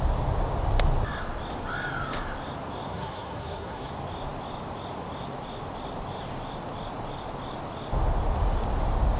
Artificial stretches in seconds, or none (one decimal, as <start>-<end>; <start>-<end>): 2.9-3.9